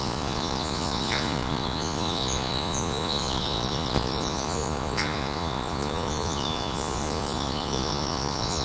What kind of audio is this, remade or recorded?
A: remade